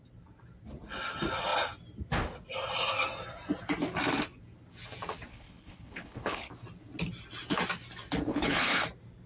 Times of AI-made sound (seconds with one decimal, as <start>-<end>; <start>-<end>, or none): 5.3-6.5; 8.3-8.8